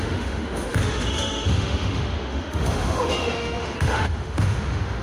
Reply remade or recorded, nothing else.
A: remade